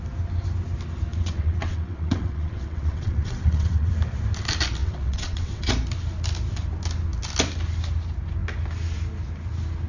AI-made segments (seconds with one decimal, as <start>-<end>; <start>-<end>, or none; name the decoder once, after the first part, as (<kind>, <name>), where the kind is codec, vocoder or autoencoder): 1.1-3.9 (vocoder, WaveNeXt); 4.8-5.7